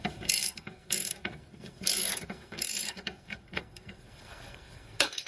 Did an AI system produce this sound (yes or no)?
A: yes